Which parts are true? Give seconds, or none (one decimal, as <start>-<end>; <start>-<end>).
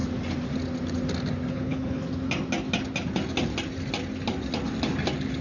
0.0-1.5; 2.0-5.4